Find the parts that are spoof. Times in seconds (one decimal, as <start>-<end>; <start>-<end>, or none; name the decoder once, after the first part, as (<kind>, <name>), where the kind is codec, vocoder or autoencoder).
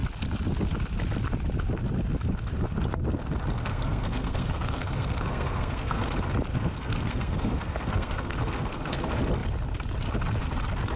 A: 3.6-6.0 (codec, SNAC); 6.5-9.0